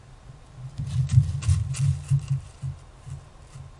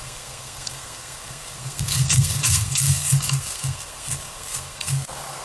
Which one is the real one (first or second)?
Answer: first